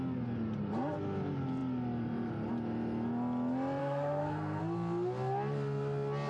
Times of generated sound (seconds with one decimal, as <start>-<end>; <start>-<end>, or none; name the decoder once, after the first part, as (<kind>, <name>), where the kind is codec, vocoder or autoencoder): 3.8-4.6 (codec, SNAC)